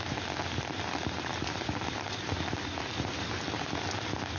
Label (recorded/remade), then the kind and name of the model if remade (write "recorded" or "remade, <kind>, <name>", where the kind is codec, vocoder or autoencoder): recorded